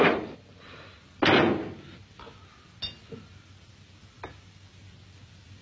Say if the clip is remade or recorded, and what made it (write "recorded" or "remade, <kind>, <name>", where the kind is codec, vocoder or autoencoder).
recorded